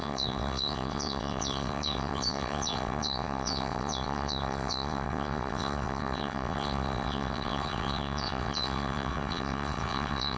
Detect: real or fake fake